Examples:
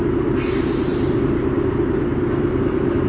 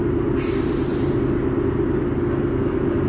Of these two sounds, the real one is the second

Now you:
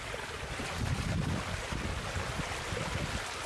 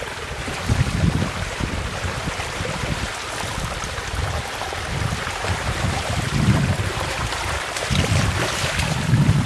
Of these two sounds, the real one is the first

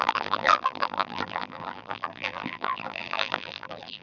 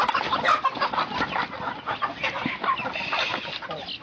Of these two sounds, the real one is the second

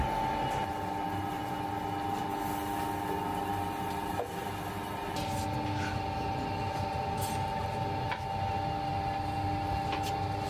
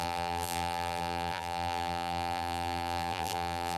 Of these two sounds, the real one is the first